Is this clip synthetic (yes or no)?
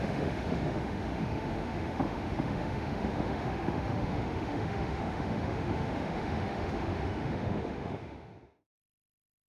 yes